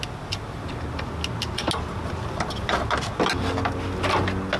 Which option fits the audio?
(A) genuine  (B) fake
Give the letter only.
A